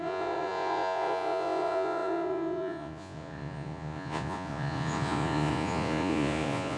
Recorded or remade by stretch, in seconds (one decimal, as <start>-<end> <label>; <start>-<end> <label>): 0.0-6.8 remade